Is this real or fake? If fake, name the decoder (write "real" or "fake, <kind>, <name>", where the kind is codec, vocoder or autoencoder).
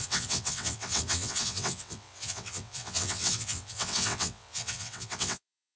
fake, vocoder, WaveNeXt